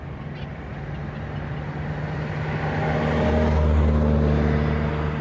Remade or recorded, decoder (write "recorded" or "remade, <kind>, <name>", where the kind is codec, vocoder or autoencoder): recorded